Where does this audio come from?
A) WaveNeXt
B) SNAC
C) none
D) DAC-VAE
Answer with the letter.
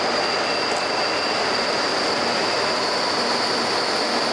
C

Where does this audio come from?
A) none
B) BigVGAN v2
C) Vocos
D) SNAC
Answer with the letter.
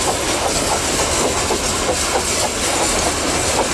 A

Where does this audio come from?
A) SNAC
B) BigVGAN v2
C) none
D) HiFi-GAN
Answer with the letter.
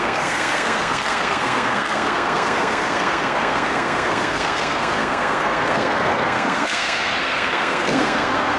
A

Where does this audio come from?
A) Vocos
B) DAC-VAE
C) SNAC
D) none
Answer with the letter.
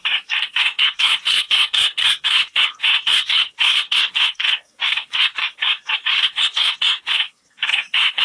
C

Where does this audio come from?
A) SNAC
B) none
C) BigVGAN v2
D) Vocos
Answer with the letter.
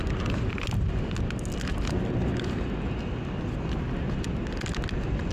B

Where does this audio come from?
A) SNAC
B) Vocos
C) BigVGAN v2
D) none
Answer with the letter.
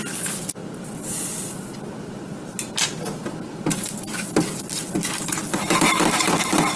D